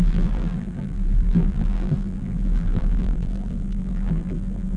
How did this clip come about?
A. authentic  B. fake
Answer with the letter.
B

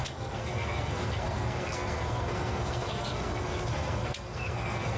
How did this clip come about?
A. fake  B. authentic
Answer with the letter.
A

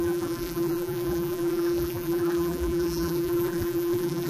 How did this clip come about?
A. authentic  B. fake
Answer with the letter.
B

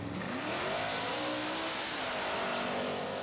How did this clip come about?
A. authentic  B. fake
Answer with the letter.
A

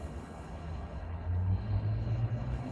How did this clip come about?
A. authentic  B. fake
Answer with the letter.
B